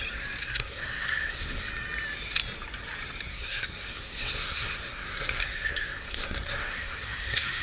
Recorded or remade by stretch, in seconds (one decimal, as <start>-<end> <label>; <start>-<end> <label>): 0.0-0.4 recorded; 0.4-1.6 remade; 1.6-3.3 recorded; 3.3-7.6 remade